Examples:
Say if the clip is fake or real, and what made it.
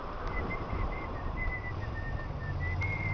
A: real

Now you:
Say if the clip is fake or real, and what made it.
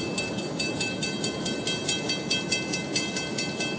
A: real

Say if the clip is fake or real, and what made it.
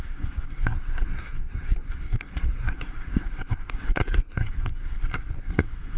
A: fake, codec, SNAC